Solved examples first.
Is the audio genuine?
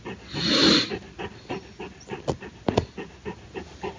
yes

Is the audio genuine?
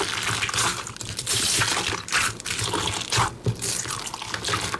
yes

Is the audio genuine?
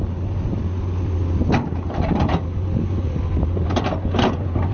yes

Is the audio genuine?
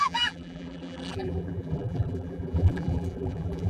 no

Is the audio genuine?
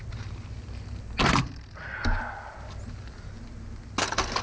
yes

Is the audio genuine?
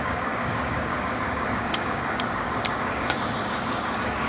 no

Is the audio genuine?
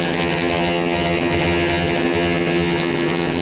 no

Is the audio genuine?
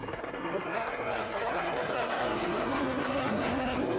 no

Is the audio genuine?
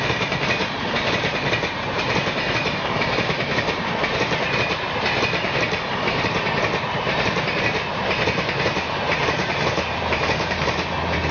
no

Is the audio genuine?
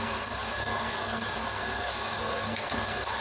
no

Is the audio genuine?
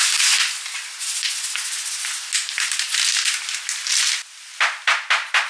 yes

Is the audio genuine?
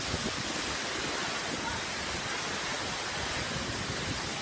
yes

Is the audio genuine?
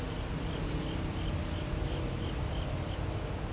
yes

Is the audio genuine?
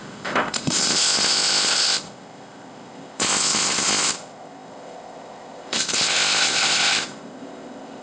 no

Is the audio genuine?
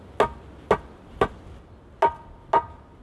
yes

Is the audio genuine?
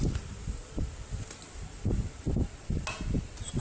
yes